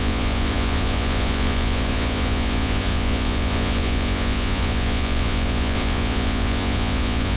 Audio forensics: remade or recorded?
remade